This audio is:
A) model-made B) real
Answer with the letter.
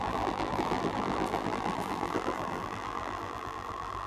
A